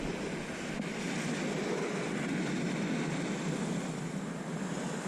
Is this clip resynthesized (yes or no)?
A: no